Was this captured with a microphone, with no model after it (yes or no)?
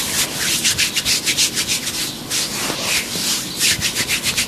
yes